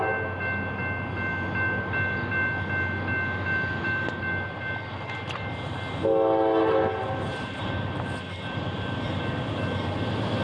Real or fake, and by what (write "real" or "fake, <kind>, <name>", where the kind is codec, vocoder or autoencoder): real